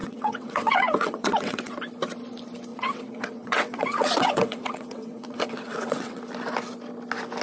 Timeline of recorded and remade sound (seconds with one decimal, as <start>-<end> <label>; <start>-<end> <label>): 0.0-1.7 remade; 1.7-2.7 recorded; 2.7-6.2 remade; 6.2-7.4 recorded